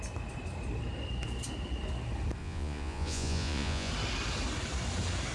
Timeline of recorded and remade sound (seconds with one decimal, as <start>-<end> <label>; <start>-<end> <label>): 0.0-2.4 recorded; 2.4-3.9 remade; 3.9-5.3 recorded